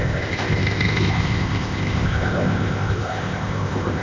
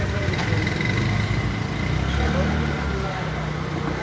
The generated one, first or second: first